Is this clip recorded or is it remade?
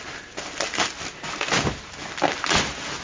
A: recorded